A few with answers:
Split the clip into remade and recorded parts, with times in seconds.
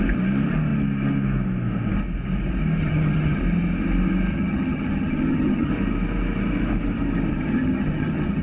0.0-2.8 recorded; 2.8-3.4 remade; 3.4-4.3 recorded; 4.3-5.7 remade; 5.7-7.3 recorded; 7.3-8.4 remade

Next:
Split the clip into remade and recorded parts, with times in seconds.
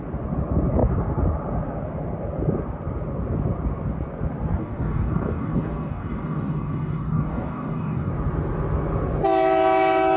0.0-4.6 recorded; 4.6-8.1 remade; 8.1-10.2 recorded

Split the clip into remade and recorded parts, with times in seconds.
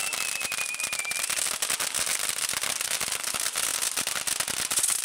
0.0-5.0 recorded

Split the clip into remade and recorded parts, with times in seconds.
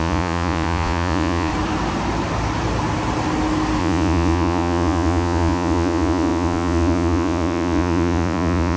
0.0-1.5 remade; 1.5-3.8 recorded; 3.8-8.8 remade